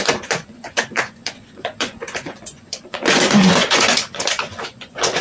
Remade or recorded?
remade